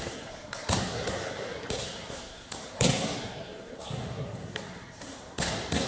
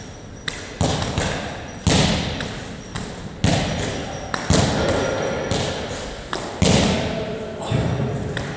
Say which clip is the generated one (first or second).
first